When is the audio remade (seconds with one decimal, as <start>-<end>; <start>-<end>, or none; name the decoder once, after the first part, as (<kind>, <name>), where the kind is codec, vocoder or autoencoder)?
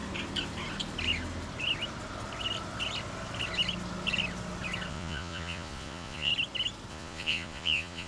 4.9-6.3 (vocoder, Vocos); 6.9-8.1